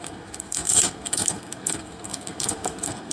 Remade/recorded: remade